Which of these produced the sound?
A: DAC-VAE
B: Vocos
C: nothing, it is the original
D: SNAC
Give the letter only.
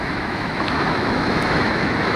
A